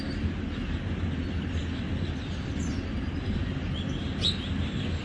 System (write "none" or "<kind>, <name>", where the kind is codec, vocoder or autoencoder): none